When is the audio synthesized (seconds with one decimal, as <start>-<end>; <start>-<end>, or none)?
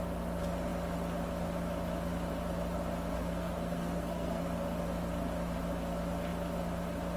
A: 3.1-4.4